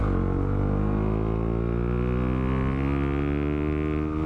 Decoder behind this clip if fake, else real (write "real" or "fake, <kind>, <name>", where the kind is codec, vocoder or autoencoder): real